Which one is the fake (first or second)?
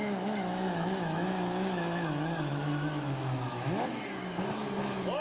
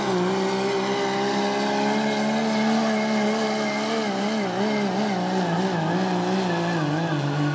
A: first